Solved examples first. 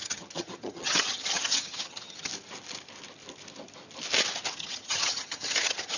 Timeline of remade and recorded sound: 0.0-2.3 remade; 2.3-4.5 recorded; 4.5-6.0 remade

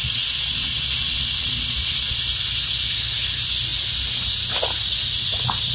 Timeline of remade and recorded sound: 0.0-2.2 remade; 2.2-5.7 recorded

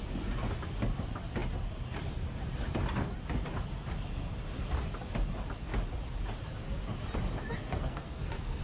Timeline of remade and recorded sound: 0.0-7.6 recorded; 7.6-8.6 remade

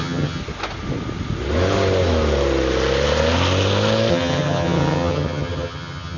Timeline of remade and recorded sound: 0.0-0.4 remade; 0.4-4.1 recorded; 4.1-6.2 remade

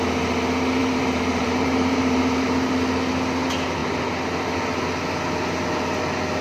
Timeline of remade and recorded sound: 0.0-0.8 recorded; 0.8-2.7 remade; 2.7-6.4 recorded

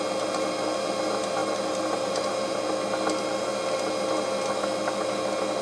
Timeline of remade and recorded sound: 0.0-1.4 recorded; 1.4-2.6 remade; 2.6-5.6 recorded